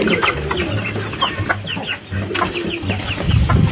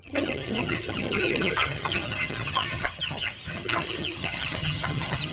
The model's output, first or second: second